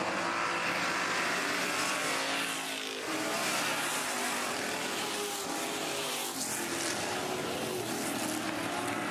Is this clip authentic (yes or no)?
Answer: yes